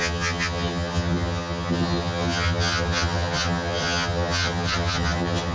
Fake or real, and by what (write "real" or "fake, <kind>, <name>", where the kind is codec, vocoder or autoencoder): fake, vocoder, HiFi-GAN